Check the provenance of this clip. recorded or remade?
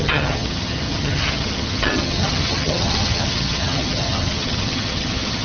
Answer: remade